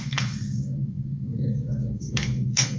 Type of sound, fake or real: fake